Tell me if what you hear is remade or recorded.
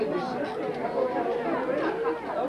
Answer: recorded